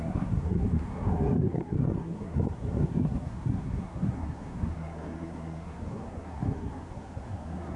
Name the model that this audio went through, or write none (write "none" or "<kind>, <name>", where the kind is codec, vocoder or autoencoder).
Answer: codec, SNAC